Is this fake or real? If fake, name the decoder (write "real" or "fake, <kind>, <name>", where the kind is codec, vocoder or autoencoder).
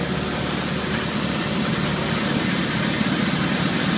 real